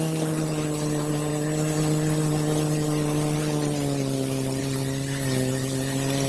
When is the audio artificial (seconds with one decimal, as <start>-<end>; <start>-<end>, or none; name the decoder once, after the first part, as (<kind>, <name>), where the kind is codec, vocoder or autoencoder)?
none